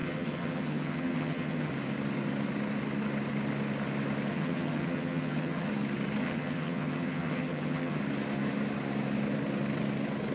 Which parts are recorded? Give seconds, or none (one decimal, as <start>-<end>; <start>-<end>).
1.7-4.3; 5.7-6.2; 8.0-10.3